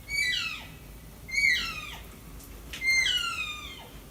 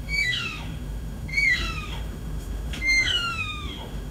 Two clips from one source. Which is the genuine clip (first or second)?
first